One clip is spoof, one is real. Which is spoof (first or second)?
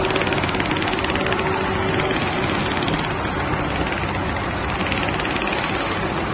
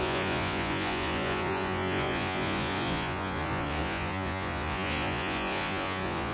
second